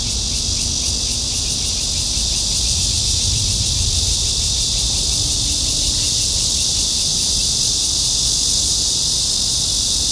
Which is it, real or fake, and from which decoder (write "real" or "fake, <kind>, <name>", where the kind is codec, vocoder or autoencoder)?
real